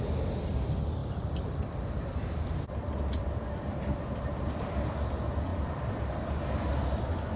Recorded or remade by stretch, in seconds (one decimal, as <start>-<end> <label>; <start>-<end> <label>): 0.0-1.0 recorded; 1.0-4.5 remade; 4.5-5.5 recorded; 5.5-6.4 remade; 6.4-7.4 recorded